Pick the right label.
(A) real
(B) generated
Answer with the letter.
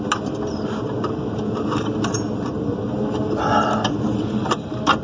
A